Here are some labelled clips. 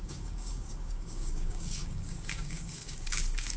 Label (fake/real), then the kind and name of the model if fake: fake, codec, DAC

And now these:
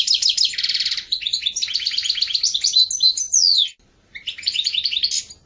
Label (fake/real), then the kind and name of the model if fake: real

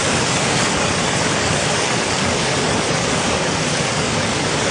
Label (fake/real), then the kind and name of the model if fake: fake, codec, DAC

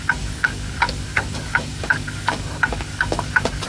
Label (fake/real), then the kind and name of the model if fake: fake, codec, DAC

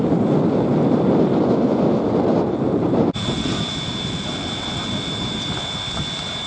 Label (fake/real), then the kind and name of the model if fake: real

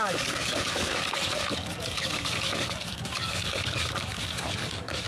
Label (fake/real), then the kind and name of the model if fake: fake, codec, DAC